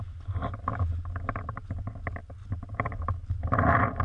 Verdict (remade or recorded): recorded